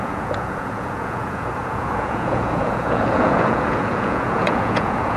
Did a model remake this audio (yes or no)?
yes